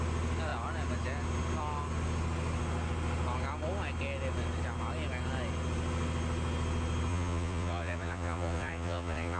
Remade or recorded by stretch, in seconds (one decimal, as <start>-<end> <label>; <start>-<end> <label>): 0.0-7.1 recorded; 7.1-9.4 remade